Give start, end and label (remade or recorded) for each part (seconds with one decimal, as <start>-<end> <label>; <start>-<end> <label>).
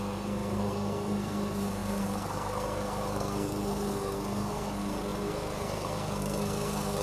0.0-7.0 remade